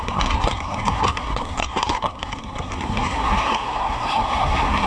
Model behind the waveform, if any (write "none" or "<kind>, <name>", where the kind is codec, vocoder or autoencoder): codec, SNAC